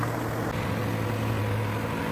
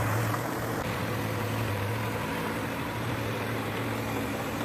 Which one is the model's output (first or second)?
second